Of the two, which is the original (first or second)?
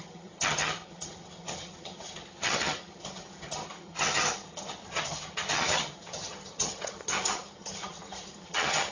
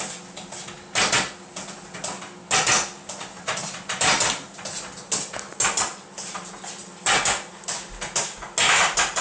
second